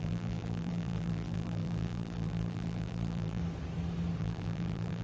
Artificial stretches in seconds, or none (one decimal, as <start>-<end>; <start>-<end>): 0.0-3.4; 4.2-5.0

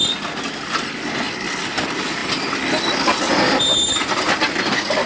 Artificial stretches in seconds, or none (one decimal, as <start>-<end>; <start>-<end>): none

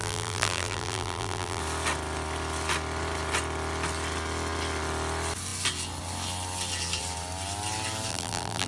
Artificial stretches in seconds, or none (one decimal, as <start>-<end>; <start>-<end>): 0.0-1.6; 8.1-8.7

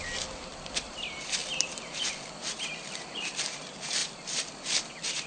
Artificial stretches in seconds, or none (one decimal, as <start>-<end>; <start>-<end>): 0.0-1.4; 2.0-4.0

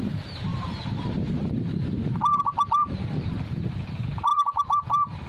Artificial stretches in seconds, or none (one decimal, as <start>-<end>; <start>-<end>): 0.5-3.0; 4.3-5.3

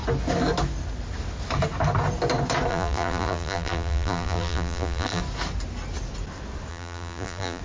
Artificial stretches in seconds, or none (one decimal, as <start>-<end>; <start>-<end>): 2.7-5.2; 6.7-7.6